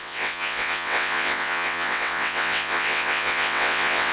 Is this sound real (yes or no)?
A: no